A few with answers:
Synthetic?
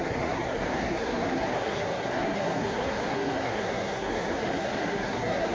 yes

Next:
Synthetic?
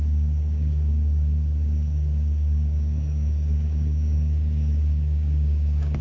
yes